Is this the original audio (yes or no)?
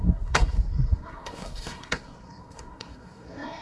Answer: no